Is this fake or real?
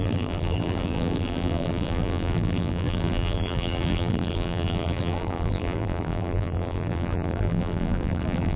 fake